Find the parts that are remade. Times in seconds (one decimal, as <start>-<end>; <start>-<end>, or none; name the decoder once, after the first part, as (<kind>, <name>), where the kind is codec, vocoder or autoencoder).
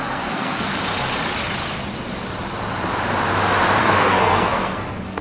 0.0-0.7 (codec, SNAC); 3.8-5.2